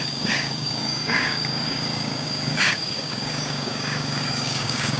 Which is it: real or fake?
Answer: fake